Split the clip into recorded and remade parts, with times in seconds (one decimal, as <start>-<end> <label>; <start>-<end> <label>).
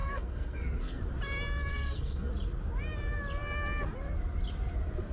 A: 0.0-1.0 remade; 1.0-1.7 recorded; 1.7-2.3 remade; 2.3-5.1 recorded